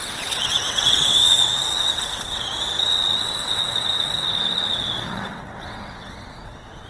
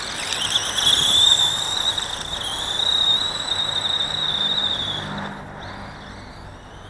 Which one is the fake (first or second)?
first